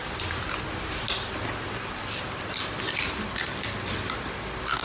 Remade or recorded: recorded